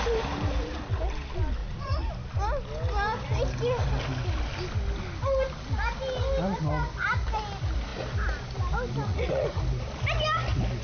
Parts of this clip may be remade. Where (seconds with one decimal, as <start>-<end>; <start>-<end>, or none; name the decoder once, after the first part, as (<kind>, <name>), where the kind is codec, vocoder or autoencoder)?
1.6-2.1 (vocoder, Vocos); 9.1-9.6